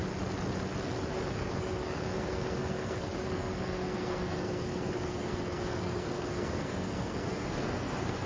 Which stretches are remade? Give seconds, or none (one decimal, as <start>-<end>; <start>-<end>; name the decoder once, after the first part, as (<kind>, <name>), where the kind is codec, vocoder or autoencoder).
1.3-8.3 (codec, SNAC)